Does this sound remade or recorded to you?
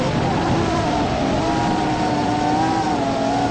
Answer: recorded